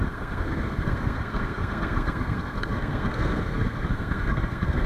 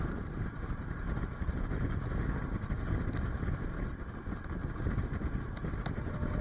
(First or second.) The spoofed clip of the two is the first